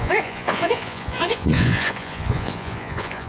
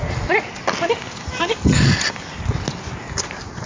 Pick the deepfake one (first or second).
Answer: first